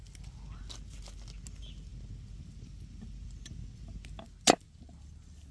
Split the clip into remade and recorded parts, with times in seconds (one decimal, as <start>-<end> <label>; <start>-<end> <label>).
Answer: 0.0-5.5 recorded